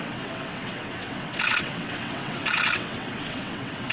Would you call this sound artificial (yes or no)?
yes